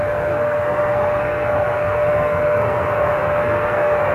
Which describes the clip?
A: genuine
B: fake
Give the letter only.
B